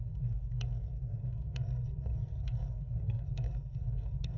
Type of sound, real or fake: fake